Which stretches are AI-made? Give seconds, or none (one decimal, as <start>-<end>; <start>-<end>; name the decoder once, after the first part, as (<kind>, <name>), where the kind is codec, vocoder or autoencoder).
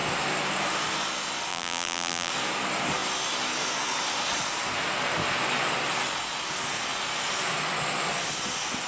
1.5-2.3 (vocoder, BigVGAN v2)